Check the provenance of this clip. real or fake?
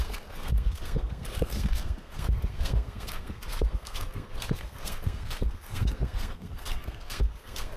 fake